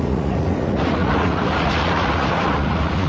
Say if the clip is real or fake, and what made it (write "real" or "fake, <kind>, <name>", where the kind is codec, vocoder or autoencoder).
fake, vocoder, Vocos